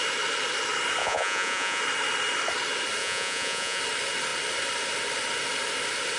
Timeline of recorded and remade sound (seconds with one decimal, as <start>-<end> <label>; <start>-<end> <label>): 0.0-1.0 recorded; 1.0-1.8 remade; 1.8-3.0 recorded; 3.0-3.8 remade; 3.8-6.2 recorded